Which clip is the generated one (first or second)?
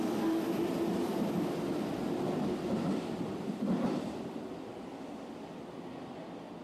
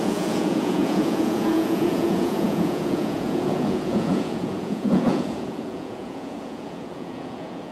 second